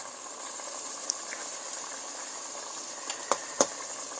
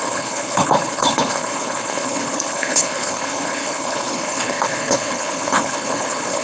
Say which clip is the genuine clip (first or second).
first